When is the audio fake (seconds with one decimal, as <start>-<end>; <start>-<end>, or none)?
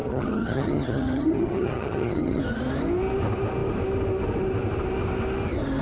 0.0-2.4